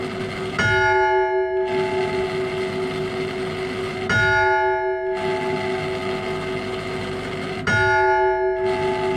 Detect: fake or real real